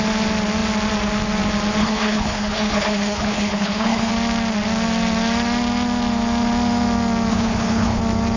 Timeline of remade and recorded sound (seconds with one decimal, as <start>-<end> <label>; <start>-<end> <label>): 0.0-1.8 recorded; 1.8-4.1 remade; 4.1-7.3 recorded; 7.3-8.0 remade; 8.0-8.4 recorded